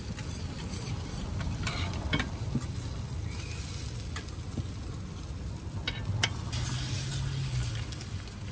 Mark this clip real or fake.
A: real